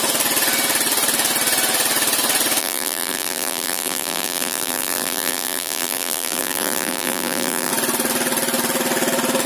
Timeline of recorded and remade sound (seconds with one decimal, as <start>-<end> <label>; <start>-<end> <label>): 0.0-2.6 recorded; 2.6-7.7 remade; 7.7-9.5 recorded